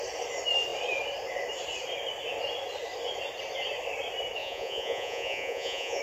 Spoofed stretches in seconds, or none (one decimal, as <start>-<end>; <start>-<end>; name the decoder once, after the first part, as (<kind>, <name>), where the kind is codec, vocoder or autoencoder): 4.4-6.0 (vocoder, Vocos)